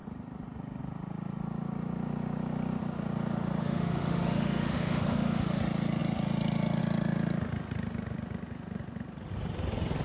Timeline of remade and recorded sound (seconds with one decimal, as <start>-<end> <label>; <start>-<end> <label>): 0.0-3.6 recorded; 3.6-5.6 remade; 5.6-10.0 recorded